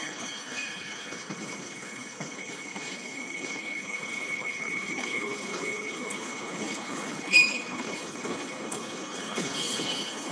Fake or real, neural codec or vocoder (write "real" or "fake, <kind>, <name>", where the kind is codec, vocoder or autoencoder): fake, codec, HILCodec